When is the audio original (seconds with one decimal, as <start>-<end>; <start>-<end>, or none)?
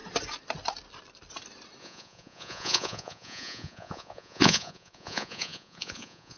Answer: 0.0-1.8